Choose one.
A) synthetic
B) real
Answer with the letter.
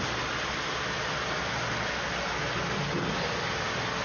B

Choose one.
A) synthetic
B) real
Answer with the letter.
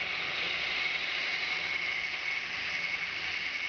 A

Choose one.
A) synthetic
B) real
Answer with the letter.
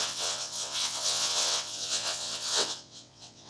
A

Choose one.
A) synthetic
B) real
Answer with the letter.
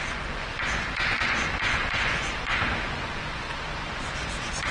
A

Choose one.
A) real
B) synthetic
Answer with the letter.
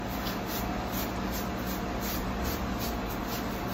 A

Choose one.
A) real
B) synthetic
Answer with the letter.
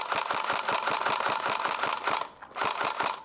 B